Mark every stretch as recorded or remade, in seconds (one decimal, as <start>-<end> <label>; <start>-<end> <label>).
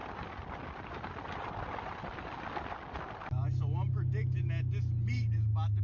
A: 0.0-5.8 recorded